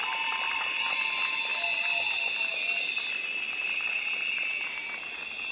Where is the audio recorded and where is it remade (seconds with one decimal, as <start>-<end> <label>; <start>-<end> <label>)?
0.0-5.5 recorded